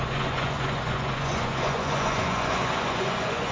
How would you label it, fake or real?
fake